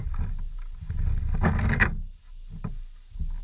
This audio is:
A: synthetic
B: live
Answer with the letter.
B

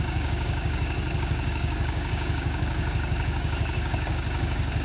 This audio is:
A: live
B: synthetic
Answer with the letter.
B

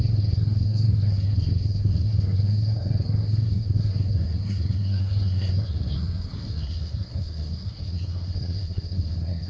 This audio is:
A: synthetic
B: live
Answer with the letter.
A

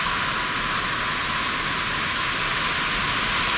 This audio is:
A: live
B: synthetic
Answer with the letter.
A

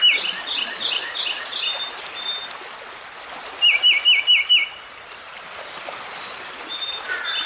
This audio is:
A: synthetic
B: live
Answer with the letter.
B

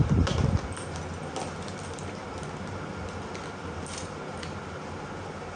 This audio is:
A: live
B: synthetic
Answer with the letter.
A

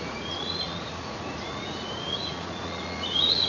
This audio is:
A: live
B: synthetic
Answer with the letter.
B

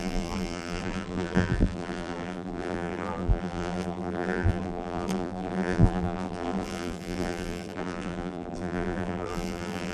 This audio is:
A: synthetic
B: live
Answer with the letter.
A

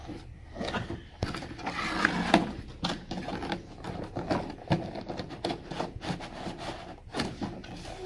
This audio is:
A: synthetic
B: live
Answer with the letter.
B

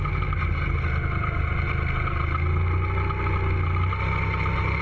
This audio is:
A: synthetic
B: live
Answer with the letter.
B